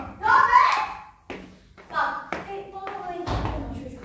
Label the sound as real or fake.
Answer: real